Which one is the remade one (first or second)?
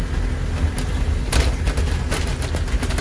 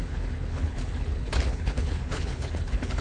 second